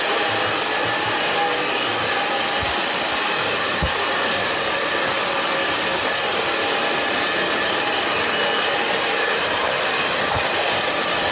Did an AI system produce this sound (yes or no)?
yes